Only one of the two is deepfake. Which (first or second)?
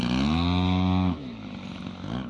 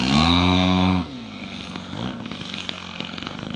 second